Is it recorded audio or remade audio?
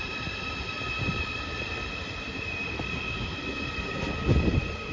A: remade